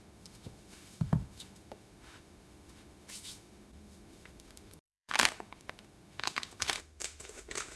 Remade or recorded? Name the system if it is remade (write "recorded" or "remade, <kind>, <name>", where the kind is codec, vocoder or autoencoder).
remade, autoencoder, DAC-VAE